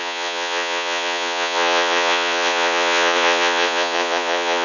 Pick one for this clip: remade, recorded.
remade